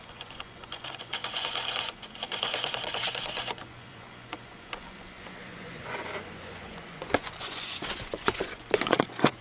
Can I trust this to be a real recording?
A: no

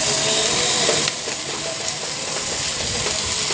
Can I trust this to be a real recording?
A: yes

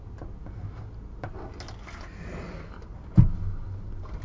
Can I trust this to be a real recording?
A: yes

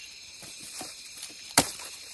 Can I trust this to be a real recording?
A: no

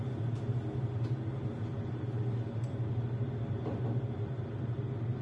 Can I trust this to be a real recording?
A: yes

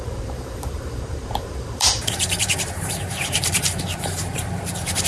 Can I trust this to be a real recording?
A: no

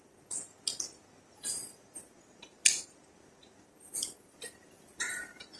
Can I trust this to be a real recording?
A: yes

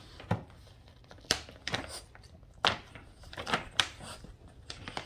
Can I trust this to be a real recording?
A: yes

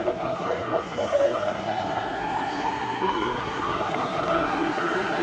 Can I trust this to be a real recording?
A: no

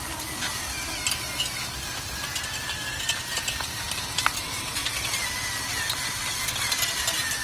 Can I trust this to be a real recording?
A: yes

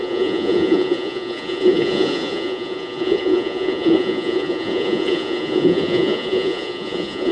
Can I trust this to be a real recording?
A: no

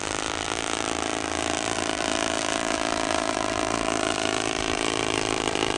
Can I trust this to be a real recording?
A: no